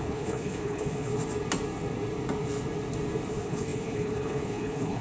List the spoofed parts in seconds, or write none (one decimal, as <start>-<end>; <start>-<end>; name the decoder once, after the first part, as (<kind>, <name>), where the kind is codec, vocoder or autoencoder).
0.0-1.1 (codec, HILCodec); 3.3-5.0